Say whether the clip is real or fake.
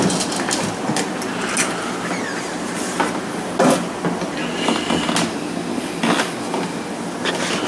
real